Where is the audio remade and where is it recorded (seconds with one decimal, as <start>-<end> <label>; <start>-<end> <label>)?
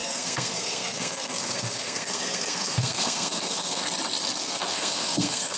0.0-3.8 remade; 3.8-4.4 recorded; 4.4-5.6 remade